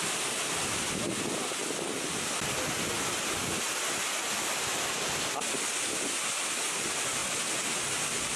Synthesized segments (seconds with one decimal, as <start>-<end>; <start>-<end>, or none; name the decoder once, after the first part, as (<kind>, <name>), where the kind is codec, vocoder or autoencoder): none